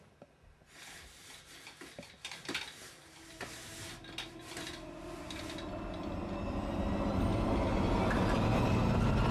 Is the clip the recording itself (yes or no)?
yes